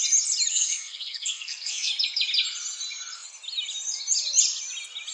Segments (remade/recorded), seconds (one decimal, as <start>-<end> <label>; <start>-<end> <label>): 0.0-0.5 recorded; 0.5-1.9 remade; 1.9-5.1 recorded